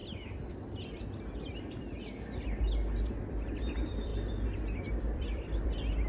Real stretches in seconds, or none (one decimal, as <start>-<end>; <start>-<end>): 0.0-3.2